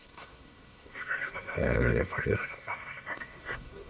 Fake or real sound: fake